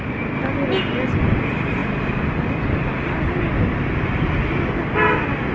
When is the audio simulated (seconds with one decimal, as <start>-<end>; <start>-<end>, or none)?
none